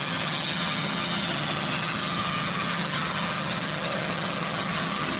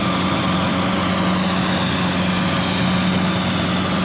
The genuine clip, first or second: second